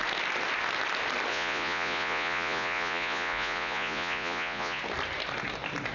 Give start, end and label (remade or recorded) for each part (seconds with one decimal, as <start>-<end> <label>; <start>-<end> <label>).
0.0-1.3 recorded; 1.3-4.8 remade; 4.8-5.9 recorded